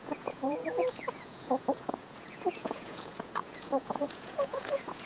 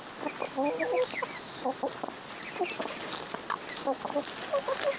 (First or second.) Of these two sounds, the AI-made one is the first